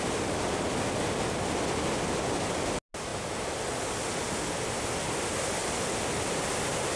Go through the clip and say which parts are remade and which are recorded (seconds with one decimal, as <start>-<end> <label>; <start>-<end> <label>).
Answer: 0.0-5.6 recorded; 5.6-6.2 remade; 6.2-7.0 recorded